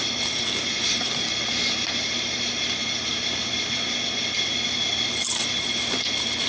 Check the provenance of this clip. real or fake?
real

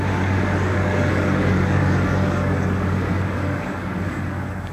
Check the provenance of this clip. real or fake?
fake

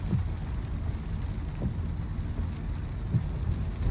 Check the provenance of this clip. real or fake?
real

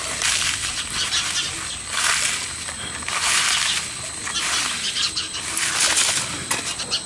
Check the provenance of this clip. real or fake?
real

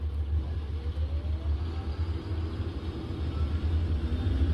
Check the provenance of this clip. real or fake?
real